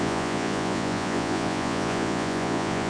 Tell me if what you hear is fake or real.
fake